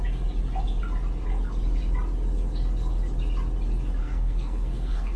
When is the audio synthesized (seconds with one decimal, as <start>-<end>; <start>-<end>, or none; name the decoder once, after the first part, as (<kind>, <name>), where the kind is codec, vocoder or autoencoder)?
4.0-5.2 (codec, SNAC)